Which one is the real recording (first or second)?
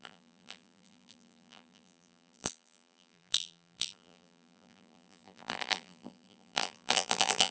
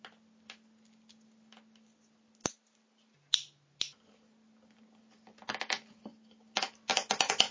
second